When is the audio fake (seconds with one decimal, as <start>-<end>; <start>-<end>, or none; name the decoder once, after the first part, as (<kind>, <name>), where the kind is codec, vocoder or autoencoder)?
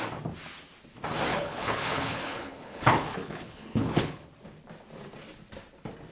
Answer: 1.3-4.3 (codec, HILCodec)